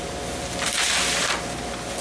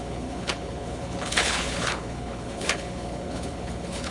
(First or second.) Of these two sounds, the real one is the first